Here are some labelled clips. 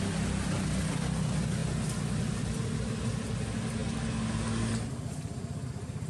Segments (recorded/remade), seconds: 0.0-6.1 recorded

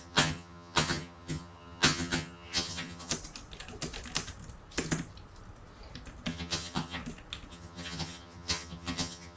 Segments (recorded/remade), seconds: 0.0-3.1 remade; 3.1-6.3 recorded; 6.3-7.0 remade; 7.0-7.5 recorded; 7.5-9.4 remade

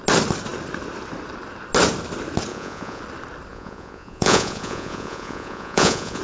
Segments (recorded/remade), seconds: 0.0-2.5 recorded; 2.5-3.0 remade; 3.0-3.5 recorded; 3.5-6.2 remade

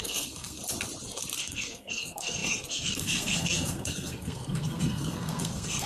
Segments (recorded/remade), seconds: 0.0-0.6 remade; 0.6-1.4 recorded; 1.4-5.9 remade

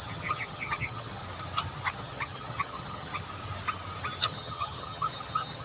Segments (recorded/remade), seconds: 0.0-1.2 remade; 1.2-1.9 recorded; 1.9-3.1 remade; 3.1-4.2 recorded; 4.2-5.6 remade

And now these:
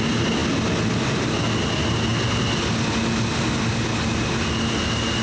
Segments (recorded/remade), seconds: 0.0-5.2 recorded

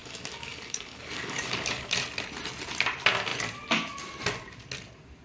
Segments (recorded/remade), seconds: 0.0-1.9 remade; 1.9-5.2 recorded